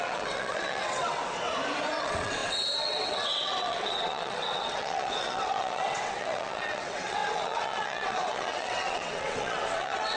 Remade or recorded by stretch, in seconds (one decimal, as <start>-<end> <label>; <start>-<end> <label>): 0.0-1.2 remade; 1.2-2.0 recorded; 2.0-10.2 remade